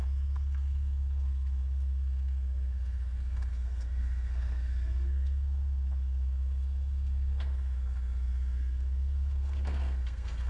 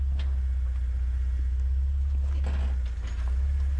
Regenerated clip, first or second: first